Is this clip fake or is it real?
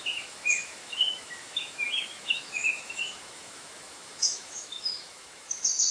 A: fake